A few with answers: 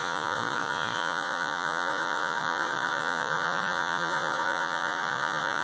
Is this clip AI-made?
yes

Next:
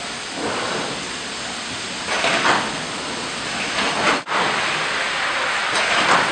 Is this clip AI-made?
no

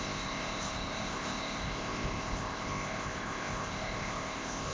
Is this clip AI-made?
yes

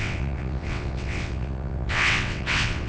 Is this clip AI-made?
yes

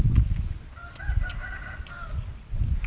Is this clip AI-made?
no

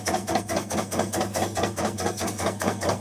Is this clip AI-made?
yes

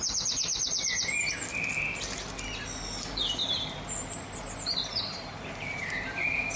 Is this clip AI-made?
yes